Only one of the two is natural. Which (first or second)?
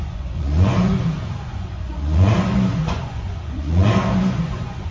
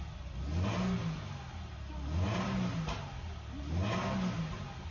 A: second